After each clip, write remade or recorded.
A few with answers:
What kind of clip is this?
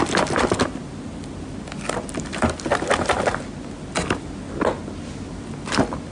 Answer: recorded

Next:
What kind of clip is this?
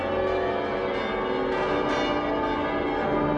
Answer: recorded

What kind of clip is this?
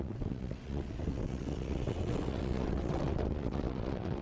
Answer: remade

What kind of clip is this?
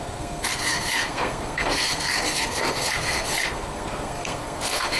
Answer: remade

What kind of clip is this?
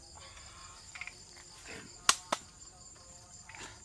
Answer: recorded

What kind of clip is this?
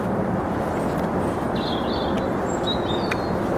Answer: recorded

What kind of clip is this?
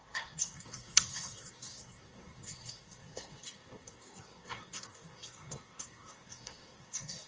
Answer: remade